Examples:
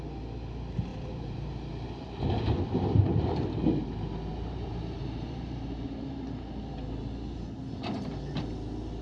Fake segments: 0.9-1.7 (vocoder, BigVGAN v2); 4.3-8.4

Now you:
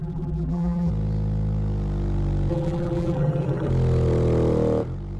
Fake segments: 0.0-0.9 (vocoder, BigVGAN v2); 2.5-3.7

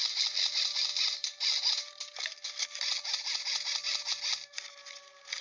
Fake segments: none

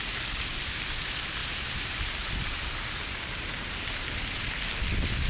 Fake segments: 1.4-4.6 (vocoder, BigVGAN v2)

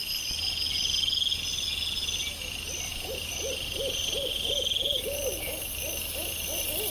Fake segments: 2.9-4.5 (vocoder, BigVGAN v2)

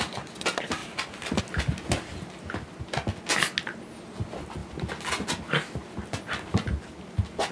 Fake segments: 0.8-1.4 (vocoder, BigVGAN v2)

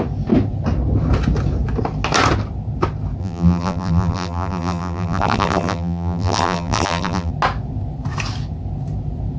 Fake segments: 3.2-7.3 (vocoder, BigVGAN v2)

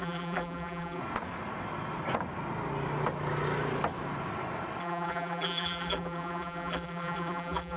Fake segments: 0.0-1.0 (vocoder, BigVGAN v2); 4.8-7.8